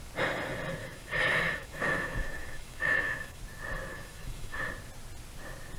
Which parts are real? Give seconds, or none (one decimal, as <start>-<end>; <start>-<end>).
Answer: 0.0-0.8; 3.4-3.9; 4.6-5.8